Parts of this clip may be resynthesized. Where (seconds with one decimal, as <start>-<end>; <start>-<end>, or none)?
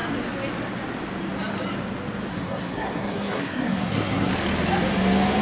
2.3-4.3